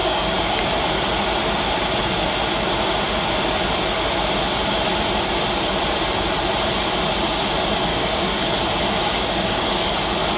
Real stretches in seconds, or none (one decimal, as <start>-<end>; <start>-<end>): 0.6-7.9; 8.5-9.0; 9.9-10.4

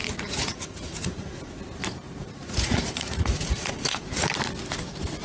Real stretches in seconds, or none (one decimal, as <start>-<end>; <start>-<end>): 1.6-2.2; 4.3-5.2

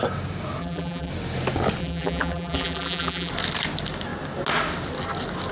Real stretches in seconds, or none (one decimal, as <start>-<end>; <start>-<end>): 0.0-0.6; 1.1-1.8; 3.3-5.5

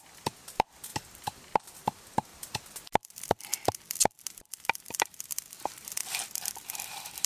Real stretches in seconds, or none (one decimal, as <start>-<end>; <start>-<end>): 2.3-4.4